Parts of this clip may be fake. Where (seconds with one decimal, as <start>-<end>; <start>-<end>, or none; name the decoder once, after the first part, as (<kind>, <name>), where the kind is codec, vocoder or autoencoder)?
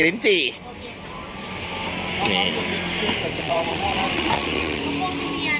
3.4-4.8 (vocoder, WaveNeXt)